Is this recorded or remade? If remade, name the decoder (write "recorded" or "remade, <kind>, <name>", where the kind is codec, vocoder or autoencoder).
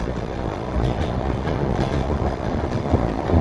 remade, vocoder, Vocos